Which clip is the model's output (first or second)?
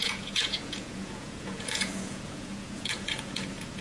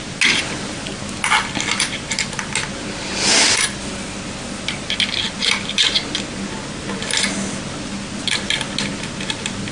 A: first